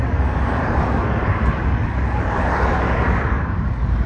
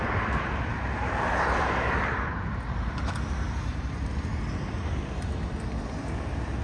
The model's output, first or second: first